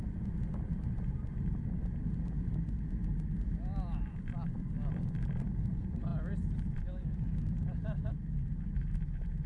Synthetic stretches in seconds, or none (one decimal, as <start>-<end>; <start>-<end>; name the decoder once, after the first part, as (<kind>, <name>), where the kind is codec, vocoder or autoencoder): 0.0-9.5 (vocoder, BigVGAN v2)